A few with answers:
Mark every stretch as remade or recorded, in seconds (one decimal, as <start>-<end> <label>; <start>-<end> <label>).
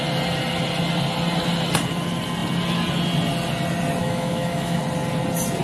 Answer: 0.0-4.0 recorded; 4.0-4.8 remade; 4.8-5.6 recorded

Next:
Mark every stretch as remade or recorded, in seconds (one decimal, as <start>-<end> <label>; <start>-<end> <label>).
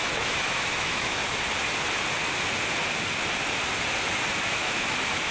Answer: 0.0-1.2 remade; 1.2-4.4 recorded; 4.4-5.3 remade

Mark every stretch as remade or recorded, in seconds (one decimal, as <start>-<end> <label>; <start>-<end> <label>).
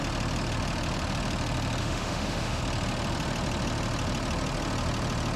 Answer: 0.0-1.8 recorded; 1.8-2.6 remade; 2.6-5.4 recorded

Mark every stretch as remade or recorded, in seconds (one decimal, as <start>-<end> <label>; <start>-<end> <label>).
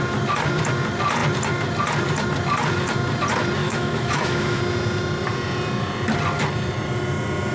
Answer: 0.0-3.6 recorded; 3.6-4.6 remade; 4.6-7.5 recorded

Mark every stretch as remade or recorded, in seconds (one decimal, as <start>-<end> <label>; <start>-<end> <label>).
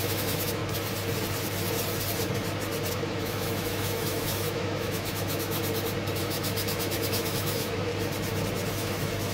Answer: 0.0-0.6 remade; 0.6-2.9 recorded; 2.9-5.6 remade; 5.6-6.2 recorded; 6.2-7.9 remade; 7.9-8.7 recorded; 8.7-9.3 remade